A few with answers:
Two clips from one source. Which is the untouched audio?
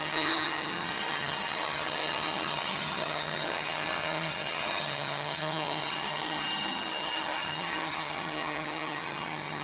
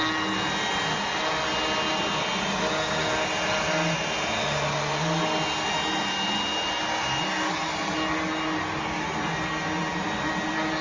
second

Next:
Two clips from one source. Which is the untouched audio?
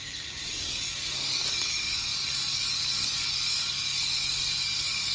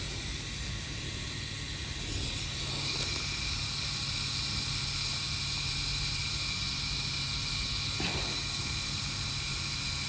second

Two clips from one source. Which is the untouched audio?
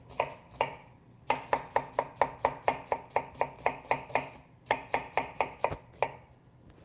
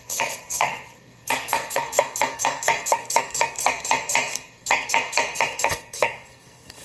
first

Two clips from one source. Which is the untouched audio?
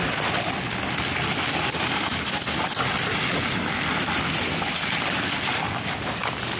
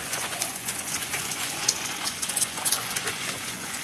first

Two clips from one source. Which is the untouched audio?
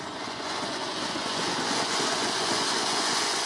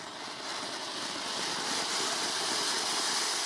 second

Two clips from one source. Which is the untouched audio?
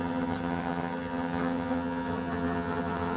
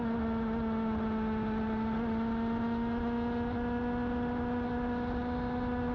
second